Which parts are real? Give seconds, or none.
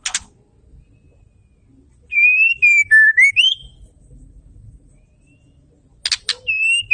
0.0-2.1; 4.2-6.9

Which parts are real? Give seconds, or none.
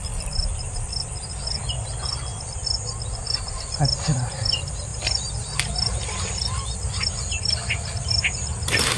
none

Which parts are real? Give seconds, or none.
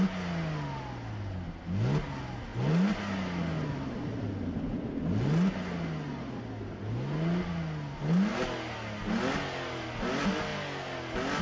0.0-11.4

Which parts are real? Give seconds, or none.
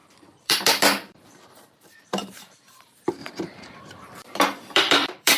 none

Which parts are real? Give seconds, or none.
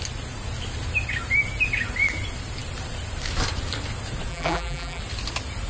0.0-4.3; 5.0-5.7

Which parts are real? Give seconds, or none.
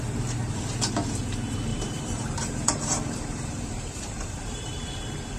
0.0-1.7; 4.9-5.4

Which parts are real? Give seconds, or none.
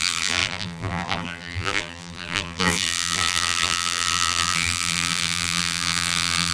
none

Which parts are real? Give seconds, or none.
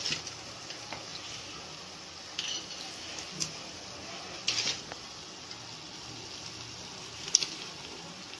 0.0-8.4